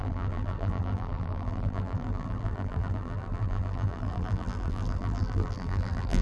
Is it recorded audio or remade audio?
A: remade